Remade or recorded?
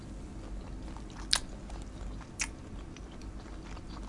recorded